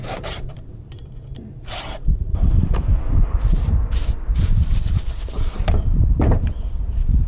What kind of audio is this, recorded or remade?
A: remade